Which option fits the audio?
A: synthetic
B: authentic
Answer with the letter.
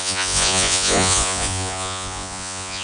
A